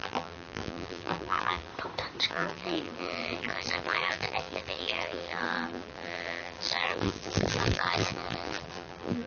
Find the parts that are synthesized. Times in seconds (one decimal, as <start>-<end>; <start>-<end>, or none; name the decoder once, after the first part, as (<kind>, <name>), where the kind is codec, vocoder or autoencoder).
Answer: 0.0-1.7 (vocoder, BigVGAN v2); 2.3-9.3